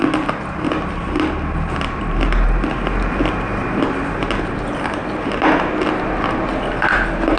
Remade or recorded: recorded